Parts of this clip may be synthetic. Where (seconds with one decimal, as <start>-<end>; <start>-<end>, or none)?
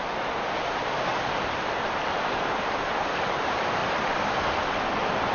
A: 1.1-3.4; 3.8-4.3